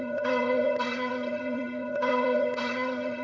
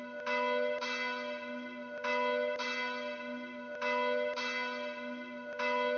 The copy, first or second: first